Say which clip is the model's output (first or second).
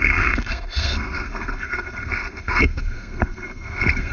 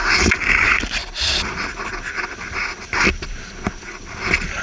first